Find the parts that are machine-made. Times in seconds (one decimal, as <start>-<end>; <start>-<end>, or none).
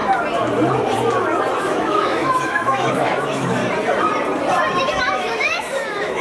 1.6-3.6; 5.0-6.2